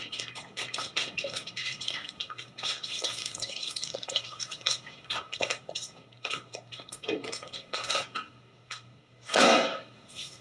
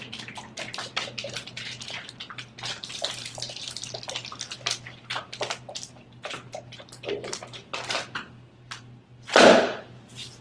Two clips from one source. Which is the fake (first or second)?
first